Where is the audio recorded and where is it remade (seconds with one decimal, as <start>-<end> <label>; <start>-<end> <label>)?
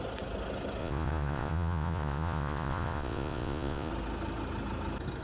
0.0-0.8 recorded; 0.8-3.9 remade; 3.9-5.2 recorded